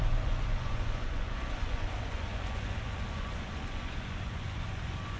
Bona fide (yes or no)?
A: no